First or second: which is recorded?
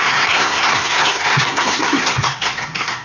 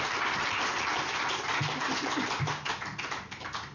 second